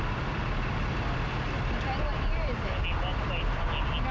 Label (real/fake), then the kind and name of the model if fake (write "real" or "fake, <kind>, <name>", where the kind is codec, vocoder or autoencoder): real